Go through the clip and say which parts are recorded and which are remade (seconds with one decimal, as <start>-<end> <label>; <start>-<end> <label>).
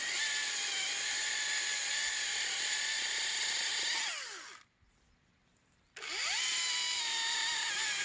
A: 0.0-8.0 recorded